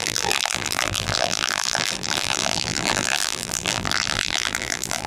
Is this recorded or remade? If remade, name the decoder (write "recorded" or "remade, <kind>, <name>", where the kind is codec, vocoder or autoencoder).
remade, vocoder, BigVGAN v2